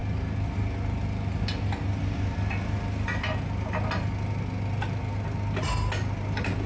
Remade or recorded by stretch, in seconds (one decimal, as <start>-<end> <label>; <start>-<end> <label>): 0.0-6.7 recorded